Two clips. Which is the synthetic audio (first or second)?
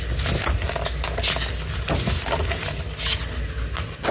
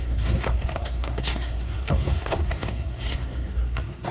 second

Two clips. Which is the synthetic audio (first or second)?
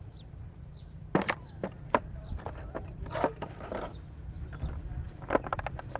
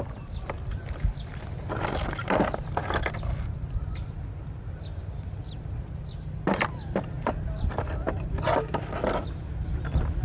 first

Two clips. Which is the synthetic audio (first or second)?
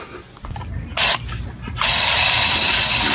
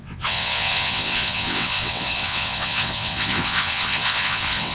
second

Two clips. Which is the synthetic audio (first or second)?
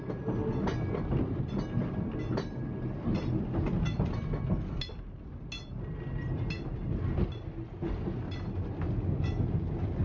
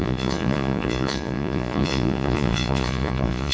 second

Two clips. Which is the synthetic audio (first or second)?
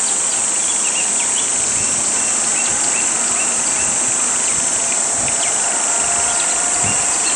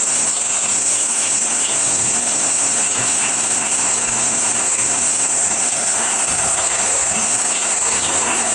second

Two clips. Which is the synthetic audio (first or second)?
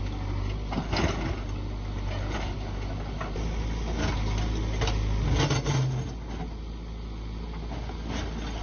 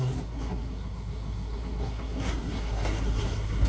second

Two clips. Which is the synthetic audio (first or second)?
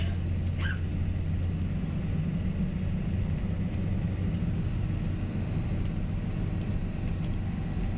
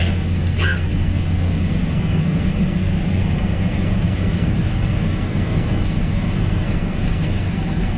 second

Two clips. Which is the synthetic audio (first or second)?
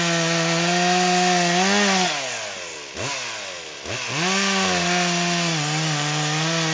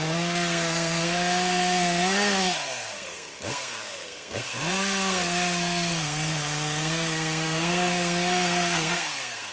second